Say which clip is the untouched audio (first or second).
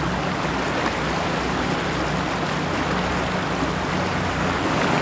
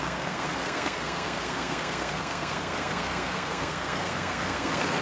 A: first